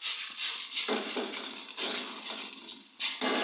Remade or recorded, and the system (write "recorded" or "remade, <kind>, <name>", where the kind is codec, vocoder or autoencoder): recorded